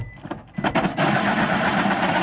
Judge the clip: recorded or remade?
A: recorded